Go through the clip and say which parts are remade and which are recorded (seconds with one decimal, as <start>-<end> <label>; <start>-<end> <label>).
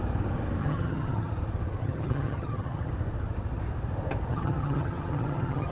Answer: 0.0-0.6 recorded; 0.6-1.3 remade; 1.3-1.8 recorded; 1.8-2.9 remade; 2.9-4.3 recorded; 4.3-5.7 remade